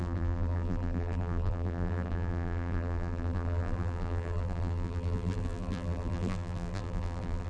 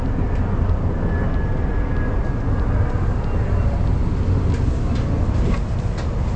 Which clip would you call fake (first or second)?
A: first